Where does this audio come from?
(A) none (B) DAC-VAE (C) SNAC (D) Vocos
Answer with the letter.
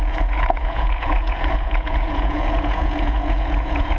D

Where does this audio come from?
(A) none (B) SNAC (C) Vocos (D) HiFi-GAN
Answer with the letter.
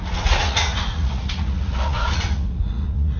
C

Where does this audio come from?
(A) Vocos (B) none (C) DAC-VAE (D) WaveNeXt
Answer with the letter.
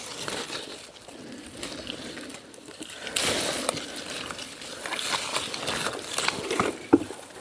B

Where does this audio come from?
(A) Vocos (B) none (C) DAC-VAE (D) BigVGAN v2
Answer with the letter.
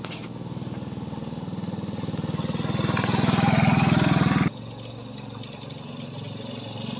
B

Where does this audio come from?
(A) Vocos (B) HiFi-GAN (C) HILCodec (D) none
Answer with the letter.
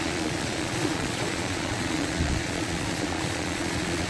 A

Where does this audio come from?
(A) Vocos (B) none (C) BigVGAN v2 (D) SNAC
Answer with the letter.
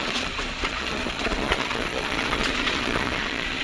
A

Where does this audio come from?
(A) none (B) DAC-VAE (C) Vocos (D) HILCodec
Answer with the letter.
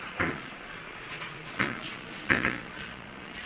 C